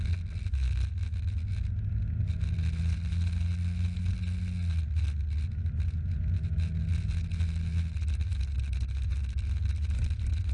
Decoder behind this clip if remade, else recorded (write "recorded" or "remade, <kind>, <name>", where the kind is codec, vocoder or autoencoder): recorded